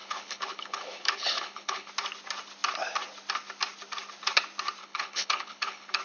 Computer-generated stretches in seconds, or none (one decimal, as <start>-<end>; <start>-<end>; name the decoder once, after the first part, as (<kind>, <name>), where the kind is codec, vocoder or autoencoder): 0.0-1.9 (codec, HILCodec); 4.8-6.0